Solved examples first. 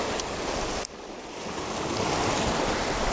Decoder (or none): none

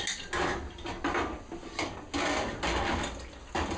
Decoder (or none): none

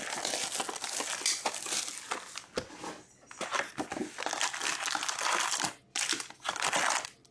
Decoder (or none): none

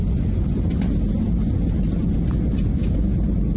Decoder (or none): none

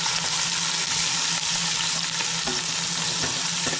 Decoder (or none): none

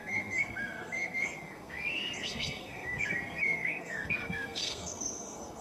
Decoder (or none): codec, SNAC